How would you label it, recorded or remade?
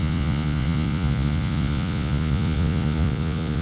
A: remade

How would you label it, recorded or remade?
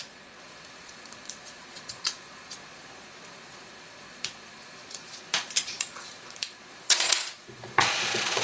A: remade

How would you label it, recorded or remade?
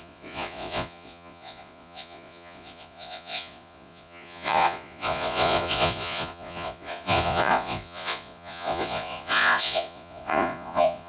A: remade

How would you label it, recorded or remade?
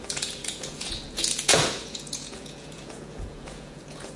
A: remade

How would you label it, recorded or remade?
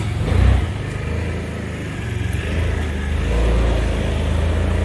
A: recorded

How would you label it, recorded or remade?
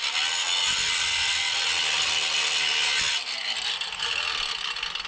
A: recorded